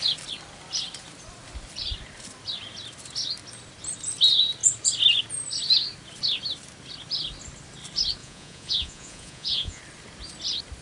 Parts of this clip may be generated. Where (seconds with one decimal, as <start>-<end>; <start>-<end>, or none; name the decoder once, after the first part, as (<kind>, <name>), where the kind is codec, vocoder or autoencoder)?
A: 8.2-9.8 (vocoder, Vocos)